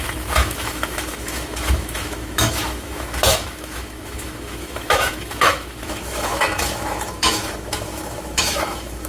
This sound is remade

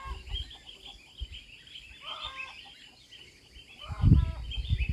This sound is recorded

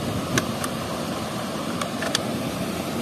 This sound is recorded